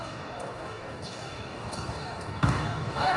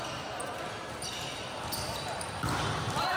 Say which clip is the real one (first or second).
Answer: second